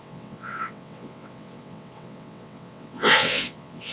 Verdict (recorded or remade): remade